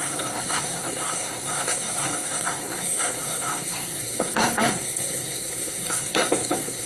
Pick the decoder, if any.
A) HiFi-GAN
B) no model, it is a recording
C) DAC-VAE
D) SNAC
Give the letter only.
D